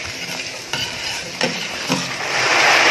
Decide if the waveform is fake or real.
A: fake